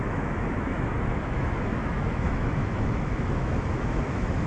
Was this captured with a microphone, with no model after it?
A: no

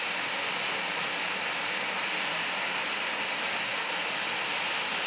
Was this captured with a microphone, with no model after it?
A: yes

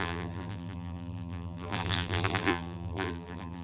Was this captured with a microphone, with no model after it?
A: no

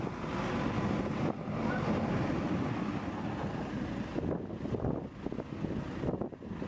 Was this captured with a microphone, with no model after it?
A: yes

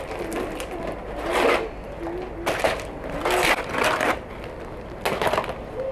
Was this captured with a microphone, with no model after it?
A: yes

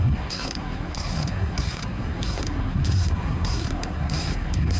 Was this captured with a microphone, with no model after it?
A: no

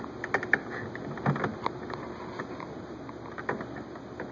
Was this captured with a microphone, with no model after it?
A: yes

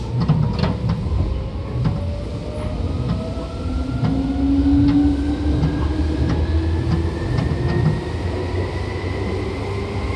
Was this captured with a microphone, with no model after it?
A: yes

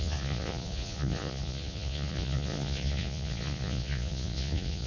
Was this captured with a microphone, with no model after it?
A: no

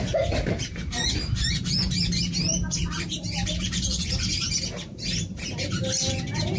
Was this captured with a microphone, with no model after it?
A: no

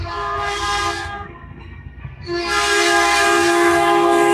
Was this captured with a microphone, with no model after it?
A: no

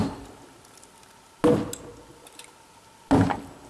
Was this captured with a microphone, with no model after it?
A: yes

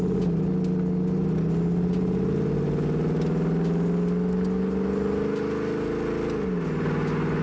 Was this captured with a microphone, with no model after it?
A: yes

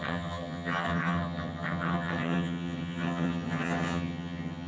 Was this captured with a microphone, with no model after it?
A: no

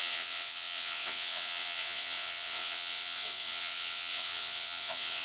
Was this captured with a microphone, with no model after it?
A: no